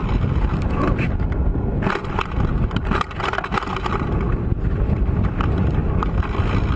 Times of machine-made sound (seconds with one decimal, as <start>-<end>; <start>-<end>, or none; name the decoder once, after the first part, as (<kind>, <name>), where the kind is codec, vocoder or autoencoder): none